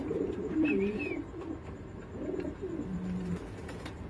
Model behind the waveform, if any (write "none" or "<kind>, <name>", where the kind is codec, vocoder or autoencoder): vocoder, BigVGAN v2